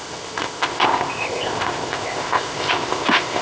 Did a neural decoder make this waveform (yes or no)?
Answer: yes